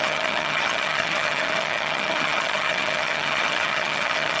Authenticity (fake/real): fake